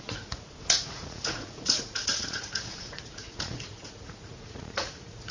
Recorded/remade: remade